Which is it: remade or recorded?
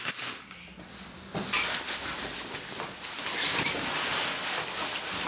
recorded